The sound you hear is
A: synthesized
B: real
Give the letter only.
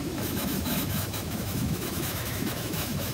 A